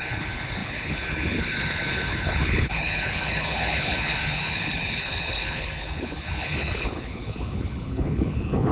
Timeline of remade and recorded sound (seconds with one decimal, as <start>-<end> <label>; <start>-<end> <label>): 0.0-8.7 remade